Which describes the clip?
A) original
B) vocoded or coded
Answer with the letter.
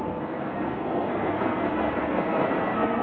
B